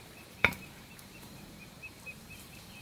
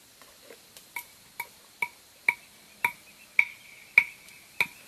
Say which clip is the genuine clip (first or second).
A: second